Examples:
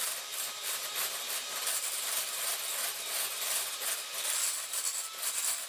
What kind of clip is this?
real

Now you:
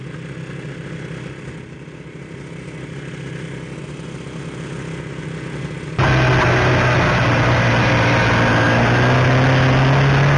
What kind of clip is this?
real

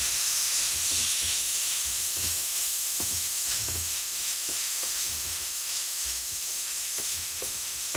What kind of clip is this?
fake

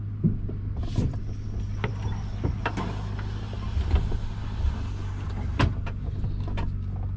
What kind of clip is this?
real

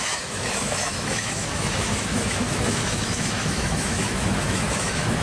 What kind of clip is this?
fake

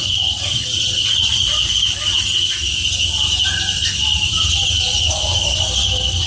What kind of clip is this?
real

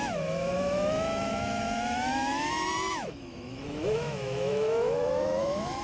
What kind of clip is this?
fake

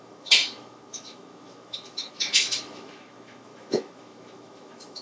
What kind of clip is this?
fake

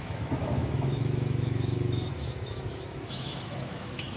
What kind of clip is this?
fake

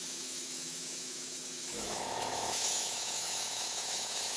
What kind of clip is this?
fake